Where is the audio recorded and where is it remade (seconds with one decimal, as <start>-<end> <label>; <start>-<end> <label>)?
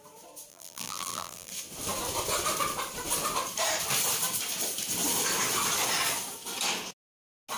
0.0-0.5 recorded; 0.5-1.5 remade; 1.5-7.6 recorded